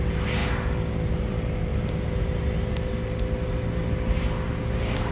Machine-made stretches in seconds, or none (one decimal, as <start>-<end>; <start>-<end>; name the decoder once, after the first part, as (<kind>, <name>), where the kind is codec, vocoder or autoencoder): none